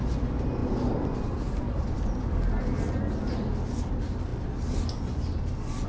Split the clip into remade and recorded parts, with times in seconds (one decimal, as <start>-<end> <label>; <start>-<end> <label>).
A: 0.0-0.6 recorded; 0.6-2.8 remade; 2.8-5.9 recorded